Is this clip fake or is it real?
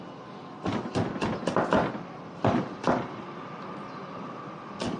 real